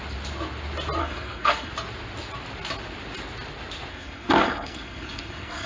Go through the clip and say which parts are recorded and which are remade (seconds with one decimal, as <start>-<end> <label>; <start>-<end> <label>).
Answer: 0.0-1.0 recorded; 1.0-1.7 remade; 1.7-3.9 recorded; 3.9-5.7 remade